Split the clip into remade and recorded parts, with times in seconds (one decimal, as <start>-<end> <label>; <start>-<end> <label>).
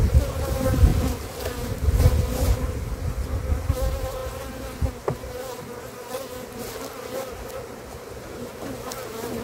0.0-9.4 recorded